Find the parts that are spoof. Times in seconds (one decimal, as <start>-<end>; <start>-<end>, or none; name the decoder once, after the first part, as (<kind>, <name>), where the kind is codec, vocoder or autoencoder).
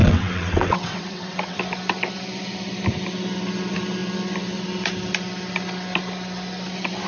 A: 0.0-1.6 (vocoder, WaveNeXt)